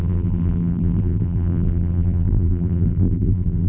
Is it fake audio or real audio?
fake